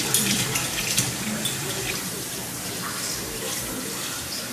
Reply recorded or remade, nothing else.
remade